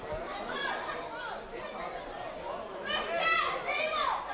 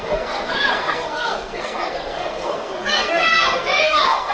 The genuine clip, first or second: first